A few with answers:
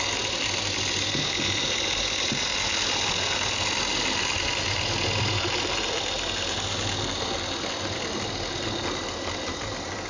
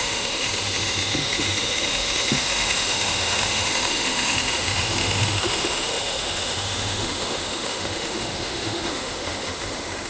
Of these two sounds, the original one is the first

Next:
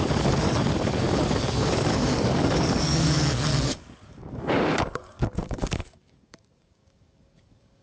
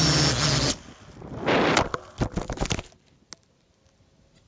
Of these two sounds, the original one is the second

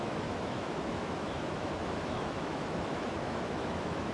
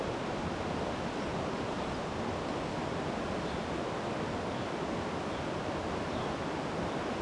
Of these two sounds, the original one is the second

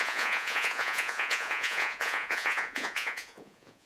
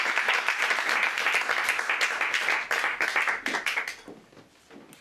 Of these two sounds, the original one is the second